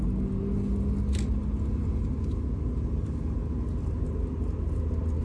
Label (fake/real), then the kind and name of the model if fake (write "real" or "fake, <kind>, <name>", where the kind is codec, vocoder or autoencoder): real